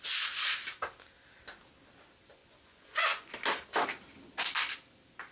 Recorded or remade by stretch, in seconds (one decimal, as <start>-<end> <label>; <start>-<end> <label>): 0.0-2.4 recorded; 2.4-3.3 remade; 3.3-5.3 recorded